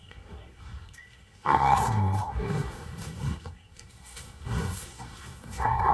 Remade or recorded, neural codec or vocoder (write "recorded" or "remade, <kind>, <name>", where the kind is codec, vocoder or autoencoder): remade, codec, SNAC